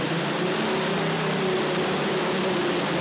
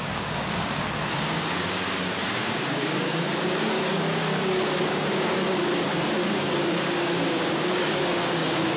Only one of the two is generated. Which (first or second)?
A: second